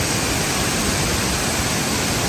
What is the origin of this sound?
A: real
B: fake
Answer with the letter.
A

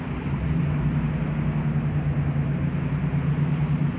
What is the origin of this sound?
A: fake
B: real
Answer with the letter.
B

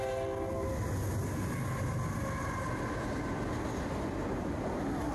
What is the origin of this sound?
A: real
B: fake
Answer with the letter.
A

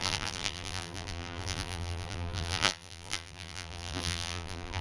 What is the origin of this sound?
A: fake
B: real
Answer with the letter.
A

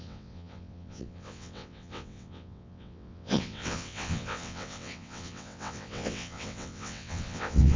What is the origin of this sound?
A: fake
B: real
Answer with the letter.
A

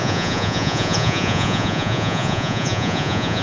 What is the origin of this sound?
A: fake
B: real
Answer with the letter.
A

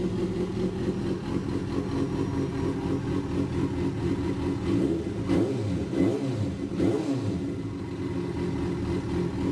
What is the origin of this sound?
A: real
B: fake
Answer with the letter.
A